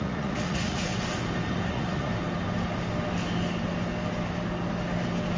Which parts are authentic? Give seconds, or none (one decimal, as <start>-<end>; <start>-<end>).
0.9-1.7; 2.1-5.4